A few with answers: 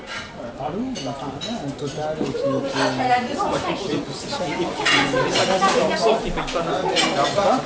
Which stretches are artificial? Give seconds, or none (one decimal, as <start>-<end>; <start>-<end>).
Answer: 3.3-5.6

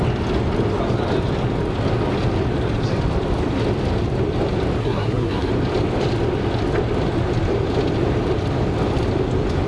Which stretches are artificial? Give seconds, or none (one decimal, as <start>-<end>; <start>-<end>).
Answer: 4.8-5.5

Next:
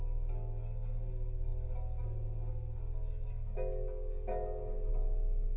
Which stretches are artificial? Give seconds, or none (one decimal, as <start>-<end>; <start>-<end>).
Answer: none

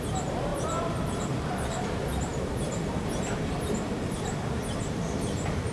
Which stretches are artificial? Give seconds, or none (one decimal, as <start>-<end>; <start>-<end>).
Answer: 0.0-0.5; 1.2-5.7